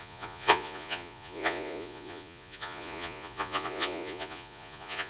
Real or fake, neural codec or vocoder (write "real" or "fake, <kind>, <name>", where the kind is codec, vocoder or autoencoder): fake, vocoder, Vocos